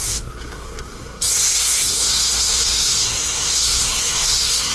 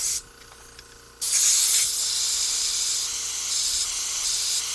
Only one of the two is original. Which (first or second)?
second